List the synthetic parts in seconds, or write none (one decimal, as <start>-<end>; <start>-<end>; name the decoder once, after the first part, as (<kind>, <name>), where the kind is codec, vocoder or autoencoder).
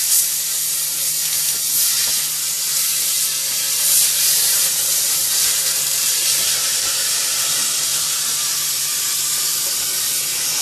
3.5-6.2 (vocoder, BigVGAN v2); 7.0-9.9